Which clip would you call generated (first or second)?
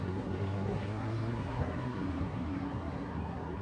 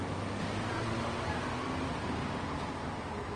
first